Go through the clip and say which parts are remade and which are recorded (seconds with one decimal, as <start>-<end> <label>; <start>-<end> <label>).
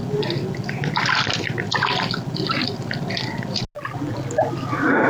0.0-5.1 recorded